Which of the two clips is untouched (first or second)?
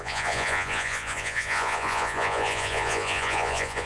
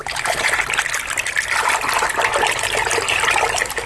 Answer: second